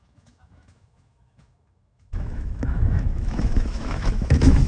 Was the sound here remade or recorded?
remade